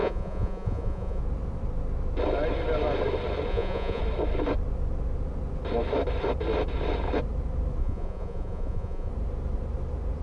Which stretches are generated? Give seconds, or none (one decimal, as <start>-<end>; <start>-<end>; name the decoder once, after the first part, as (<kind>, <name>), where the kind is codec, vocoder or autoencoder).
0.0-1.2 (vocoder, Vocos); 3.5-4.0; 7.8-9.1